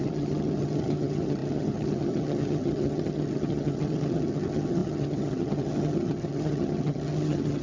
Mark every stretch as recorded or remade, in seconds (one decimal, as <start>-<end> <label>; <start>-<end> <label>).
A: 0.0-7.6 remade

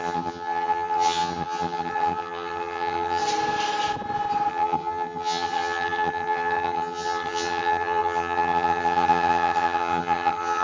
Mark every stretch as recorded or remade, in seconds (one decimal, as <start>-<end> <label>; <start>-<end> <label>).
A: 0.0-3.2 remade; 3.2-4.5 recorded; 4.5-10.6 remade

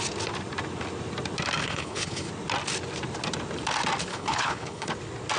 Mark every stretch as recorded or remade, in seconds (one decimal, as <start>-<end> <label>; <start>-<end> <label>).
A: 0.0-1.6 recorded; 1.6-2.3 remade; 2.3-4.1 recorded; 4.1-4.9 remade; 4.9-5.4 recorded

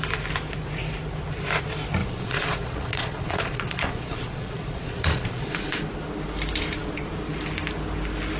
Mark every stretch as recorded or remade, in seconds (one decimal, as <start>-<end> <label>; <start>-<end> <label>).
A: 0.0-2.0 recorded; 2.0-5.8 remade; 5.8-8.4 recorded

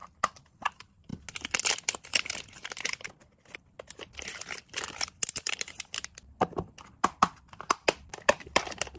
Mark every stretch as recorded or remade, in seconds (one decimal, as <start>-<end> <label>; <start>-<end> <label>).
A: 0.0-0.6 recorded; 0.6-1.1 remade; 1.1-1.7 recorded; 1.7-9.0 remade

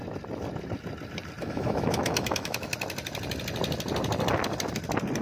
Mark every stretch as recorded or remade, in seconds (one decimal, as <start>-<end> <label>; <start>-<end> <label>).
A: 0.0-1.4 recorded; 1.4-2.7 remade; 2.7-5.2 recorded